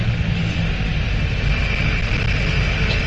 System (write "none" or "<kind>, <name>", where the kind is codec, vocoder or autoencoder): none